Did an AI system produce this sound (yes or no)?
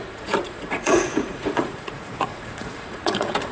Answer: yes